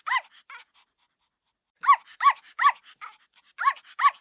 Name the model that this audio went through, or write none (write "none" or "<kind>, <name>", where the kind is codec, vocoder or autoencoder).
none